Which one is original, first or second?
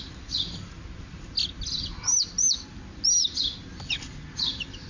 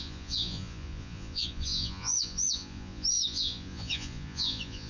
first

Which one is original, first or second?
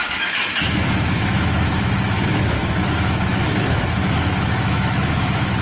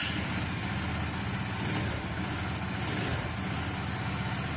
second